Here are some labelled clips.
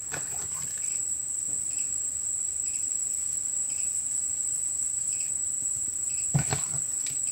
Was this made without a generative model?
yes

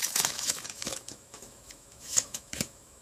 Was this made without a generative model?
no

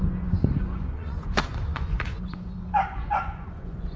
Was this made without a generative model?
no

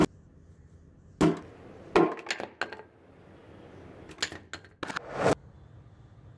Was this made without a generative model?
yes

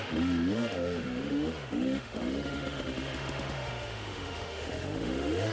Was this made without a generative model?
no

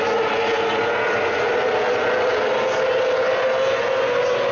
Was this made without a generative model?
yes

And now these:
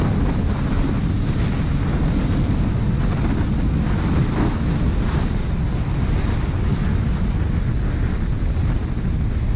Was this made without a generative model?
yes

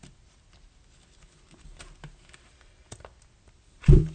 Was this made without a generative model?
yes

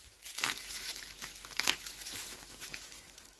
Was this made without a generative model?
no